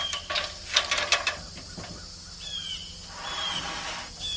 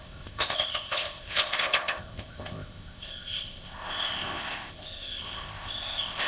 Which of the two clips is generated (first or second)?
second